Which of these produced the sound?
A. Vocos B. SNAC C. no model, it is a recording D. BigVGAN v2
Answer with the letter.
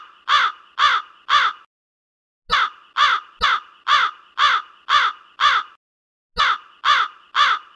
C